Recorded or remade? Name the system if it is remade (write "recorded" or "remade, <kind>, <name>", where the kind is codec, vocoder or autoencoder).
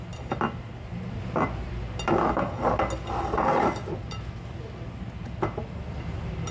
recorded